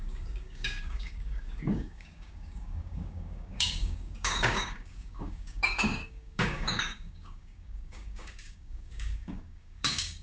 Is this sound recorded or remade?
remade